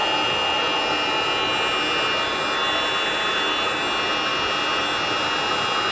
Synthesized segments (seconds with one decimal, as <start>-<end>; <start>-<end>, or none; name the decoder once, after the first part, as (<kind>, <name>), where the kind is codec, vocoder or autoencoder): none

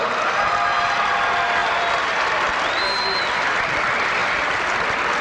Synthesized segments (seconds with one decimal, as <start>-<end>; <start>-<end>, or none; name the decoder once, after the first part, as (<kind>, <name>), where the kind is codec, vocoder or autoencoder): none

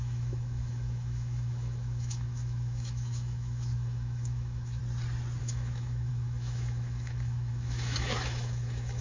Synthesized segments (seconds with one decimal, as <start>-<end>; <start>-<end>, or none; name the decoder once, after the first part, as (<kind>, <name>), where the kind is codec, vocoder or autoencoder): 0.0-4.8 (autoencoder, DAC-VAE); 5.4-9.0

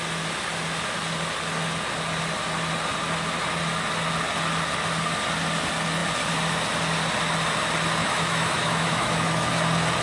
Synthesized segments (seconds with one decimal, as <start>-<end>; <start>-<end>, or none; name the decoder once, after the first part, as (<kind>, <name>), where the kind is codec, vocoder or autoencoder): 8.0-9.5 (autoencoder, DAC-VAE)

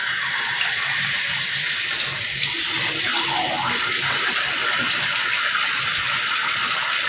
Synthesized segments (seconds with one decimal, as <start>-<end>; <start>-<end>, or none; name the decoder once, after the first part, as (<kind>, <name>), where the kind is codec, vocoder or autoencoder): 0.0-4.3 (vocoder, BigVGAN v2)

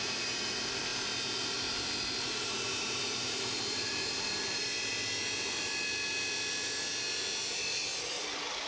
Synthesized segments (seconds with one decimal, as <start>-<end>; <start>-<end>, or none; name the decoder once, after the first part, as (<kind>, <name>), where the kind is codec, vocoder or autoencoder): 0.0-4.9 (vocoder, BigVGAN v2); 8.0-8.7

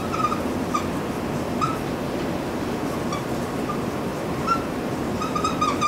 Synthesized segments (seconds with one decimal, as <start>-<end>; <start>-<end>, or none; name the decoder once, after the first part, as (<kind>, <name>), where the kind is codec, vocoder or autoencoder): none